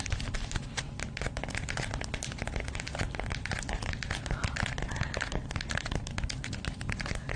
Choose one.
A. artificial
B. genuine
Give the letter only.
B